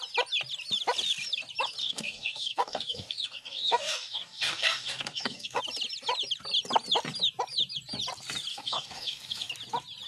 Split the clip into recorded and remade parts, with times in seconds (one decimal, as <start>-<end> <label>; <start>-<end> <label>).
0.0-1.8 recorded; 1.8-5.6 remade; 5.6-8.5 recorded; 8.5-9.5 remade; 9.5-10.1 recorded